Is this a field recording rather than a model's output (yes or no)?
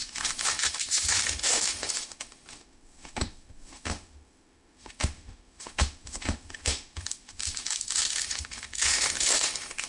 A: no